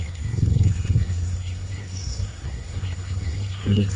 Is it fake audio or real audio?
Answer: fake